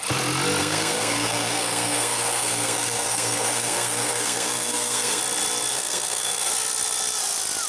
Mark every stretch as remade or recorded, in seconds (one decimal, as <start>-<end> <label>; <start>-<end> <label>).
0.0-0.6 recorded; 0.6-5.2 remade; 5.2-5.7 recorded; 5.7-6.5 remade; 6.5-7.7 recorded